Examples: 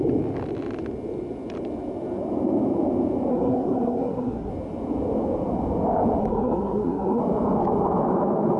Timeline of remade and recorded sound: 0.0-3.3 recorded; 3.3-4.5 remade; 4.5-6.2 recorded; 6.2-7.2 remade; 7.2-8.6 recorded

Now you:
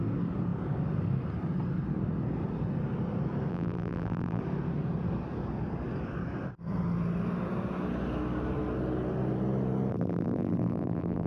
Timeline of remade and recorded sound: 0.0-3.5 recorded; 3.5-4.4 remade; 4.4-9.9 recorded; 9.9-11.3 remade